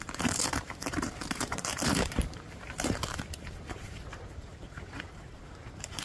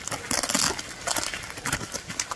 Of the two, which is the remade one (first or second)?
first